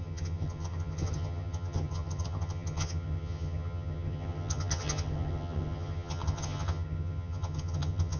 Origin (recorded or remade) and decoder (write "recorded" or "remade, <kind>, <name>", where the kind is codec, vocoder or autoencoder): remade, vocoder, HiFi-GAN